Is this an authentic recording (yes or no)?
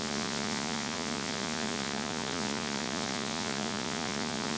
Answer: no